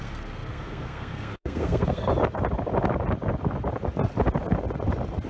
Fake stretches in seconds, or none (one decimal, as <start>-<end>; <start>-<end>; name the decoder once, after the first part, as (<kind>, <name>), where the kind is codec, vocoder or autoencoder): 0.0-2.1 (codec, SNAC)